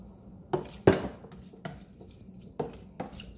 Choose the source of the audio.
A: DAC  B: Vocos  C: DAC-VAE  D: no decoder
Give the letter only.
D